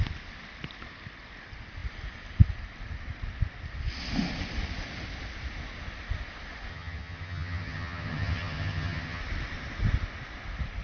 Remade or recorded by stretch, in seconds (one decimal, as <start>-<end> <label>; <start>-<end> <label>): 0.0-6.7 recorded; 6.7-9.2 remade; 9.2-10.8 recorded